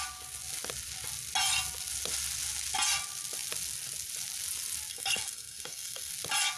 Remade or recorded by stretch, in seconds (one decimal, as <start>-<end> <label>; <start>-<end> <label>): 0.0-4.9 recorded; 4.9-6.1 remade; 6.1-6.6 recorded